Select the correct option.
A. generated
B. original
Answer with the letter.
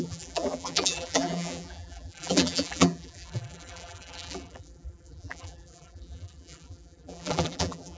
A